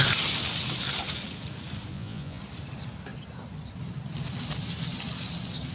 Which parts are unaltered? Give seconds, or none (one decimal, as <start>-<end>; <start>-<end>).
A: 0.0-1.9; 2.4-5.7